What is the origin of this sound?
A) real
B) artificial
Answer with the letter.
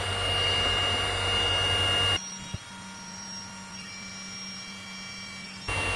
A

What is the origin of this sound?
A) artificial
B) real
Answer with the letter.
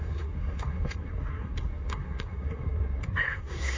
A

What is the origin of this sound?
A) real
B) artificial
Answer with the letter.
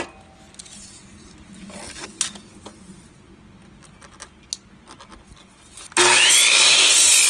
A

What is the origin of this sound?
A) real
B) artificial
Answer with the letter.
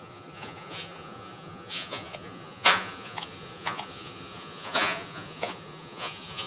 B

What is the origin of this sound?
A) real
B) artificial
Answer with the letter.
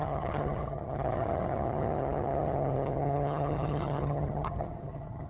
B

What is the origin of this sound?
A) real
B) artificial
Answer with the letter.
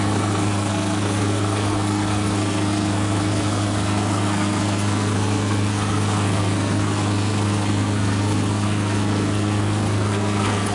B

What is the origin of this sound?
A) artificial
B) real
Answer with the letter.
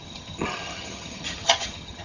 A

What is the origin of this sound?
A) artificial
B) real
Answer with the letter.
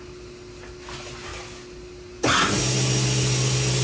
B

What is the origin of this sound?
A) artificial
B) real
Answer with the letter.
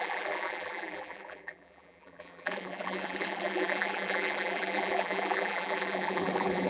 A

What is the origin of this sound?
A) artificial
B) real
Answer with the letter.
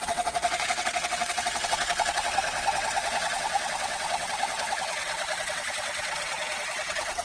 A